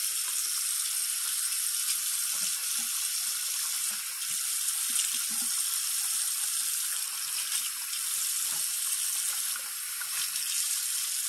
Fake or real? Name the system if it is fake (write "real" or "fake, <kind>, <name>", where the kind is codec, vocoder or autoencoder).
real